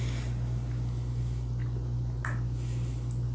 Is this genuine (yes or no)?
yes